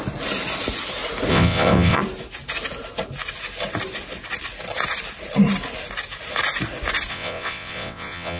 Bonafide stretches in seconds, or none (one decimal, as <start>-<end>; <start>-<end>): 0.0-1.3; 2.0-7.1